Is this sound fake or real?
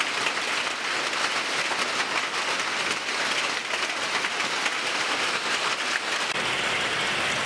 real